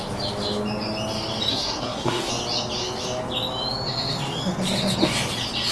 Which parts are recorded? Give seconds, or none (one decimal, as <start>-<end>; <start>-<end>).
0.0-1.5; 2.3-5.7